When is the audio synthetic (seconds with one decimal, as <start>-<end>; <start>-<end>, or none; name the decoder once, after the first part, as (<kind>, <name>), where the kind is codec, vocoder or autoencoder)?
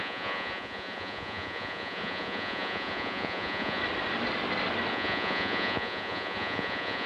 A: 0.0-3.8 (vocoder, Vocos); 4.9-7.1